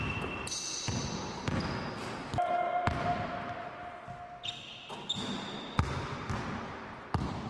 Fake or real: real